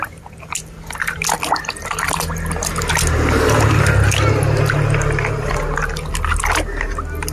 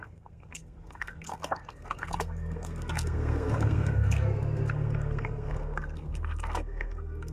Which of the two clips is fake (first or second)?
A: second